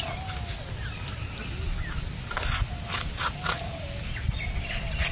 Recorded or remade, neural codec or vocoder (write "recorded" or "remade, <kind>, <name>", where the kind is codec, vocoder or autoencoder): recorded